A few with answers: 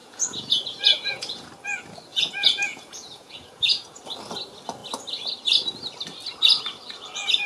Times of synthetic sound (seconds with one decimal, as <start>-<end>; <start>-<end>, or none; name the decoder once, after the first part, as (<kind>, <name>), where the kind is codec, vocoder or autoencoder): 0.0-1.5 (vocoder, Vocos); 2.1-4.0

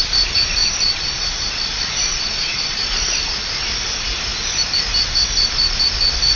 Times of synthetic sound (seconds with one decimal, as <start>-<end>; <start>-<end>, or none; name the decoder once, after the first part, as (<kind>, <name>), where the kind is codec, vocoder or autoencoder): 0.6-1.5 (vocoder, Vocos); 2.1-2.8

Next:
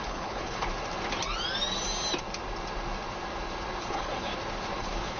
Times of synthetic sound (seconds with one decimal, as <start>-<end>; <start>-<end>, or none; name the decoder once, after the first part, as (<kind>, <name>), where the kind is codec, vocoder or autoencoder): 0.0-0.7 (codec, HILCodec); 3.8-4.3; 4.8-5.2